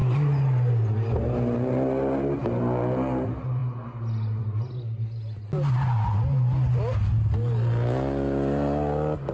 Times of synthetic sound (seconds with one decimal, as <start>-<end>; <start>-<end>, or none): none